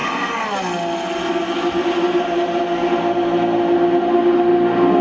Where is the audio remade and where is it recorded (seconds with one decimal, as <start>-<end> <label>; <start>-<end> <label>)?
0.0-5.0 recorded